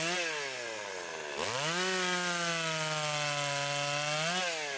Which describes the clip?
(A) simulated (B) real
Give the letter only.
B